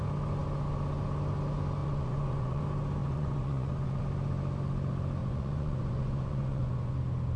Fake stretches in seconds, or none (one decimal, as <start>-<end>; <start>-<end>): 1.8-2.6; 3.0-4.0; 5.2-7.0